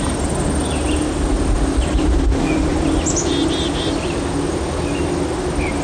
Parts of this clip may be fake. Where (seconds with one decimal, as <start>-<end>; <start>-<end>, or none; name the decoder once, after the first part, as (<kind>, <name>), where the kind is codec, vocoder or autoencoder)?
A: none

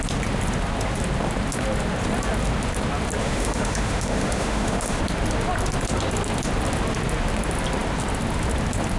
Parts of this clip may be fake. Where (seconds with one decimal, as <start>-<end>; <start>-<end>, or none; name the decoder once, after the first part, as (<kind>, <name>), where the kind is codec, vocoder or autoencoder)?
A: 3.2-5.0 (autoencoder, DAC-VAE)

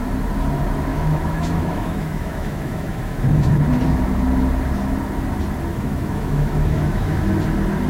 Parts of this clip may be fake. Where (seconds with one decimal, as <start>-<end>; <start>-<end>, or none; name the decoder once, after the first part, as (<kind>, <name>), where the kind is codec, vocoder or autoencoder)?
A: 0.9-3.6 (autoencoder, DAC-VAE); 5.7-7.2

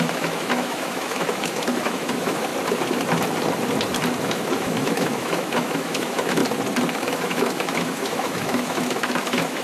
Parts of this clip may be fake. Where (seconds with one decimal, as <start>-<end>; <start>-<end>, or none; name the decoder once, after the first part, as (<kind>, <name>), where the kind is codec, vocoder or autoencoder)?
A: 0.0-2.5 (autoencoder, DAC-VAE); 4.2-6.4; 6.9-9.6

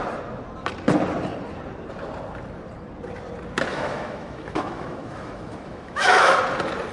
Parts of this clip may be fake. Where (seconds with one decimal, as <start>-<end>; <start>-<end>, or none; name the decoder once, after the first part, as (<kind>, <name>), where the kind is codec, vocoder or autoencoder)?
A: 3.7-6.4 (autoencoder, DAC-VAE)

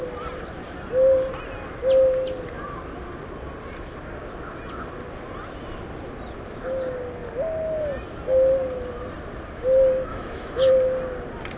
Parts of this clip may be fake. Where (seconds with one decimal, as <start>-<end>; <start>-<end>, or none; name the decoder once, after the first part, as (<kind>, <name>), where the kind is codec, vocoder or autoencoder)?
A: 10.1-10.7 (autoencoder, DAC-VAE)

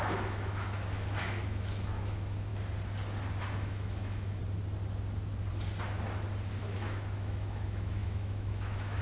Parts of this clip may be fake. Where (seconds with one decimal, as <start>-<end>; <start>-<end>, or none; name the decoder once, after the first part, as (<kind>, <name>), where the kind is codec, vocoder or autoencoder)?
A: 0.0-2.5 (autoencoder, DAC-VAE); 3.4-4.4; 6.6-9.0

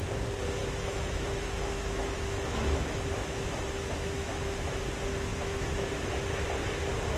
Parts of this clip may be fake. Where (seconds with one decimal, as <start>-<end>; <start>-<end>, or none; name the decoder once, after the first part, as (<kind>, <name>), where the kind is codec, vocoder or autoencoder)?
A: 0.6-4.8 (autoencoder, DAC-VAE); 5.3-6.1